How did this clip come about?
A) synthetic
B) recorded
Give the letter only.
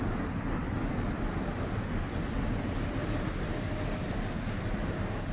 B